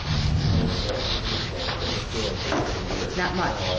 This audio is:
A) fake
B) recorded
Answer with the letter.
B